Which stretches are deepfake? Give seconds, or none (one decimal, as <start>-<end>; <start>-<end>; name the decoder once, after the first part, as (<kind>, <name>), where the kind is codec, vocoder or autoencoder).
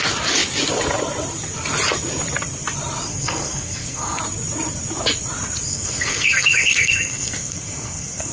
3.1-4.2 (codec, SNAC); 5.7-8.3